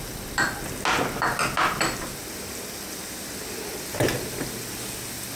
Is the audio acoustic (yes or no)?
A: yes